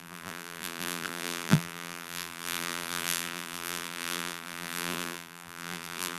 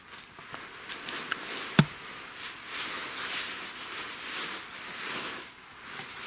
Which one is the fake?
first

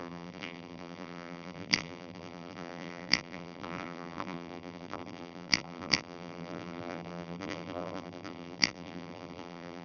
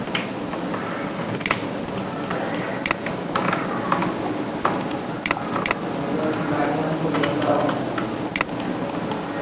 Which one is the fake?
first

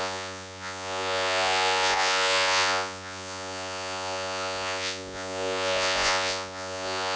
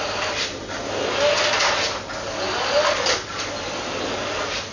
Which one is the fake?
first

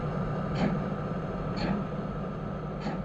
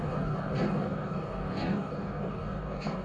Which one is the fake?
second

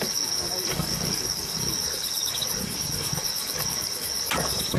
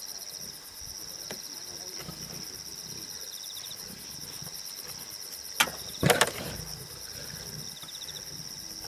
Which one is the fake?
first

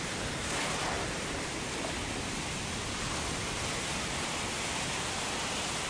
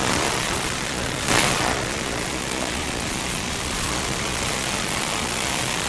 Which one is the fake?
second